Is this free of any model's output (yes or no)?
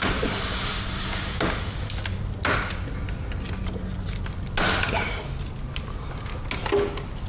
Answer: yes